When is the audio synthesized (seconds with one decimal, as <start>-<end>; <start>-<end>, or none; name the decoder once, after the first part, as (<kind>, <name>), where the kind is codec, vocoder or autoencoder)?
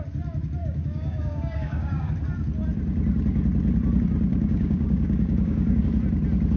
0.6-2.1 (codec, DAC); 4.3-5.8